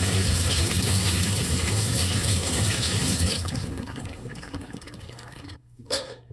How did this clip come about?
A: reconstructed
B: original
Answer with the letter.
A